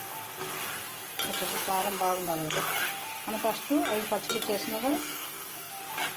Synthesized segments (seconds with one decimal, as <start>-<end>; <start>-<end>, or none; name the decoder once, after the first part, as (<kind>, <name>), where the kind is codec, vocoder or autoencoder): 1.5-2.6 (codec, SNAC); 4.7-5.8